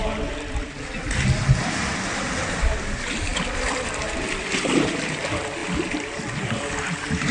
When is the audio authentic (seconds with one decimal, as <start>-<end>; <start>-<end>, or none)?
0.0-7.3